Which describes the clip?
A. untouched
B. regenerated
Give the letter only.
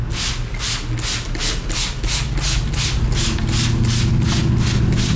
A